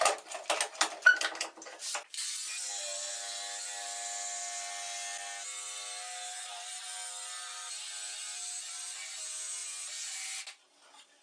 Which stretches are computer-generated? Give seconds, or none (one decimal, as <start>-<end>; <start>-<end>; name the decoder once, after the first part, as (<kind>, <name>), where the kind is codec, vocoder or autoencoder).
none